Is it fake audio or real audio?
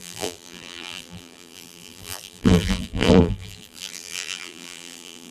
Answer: fake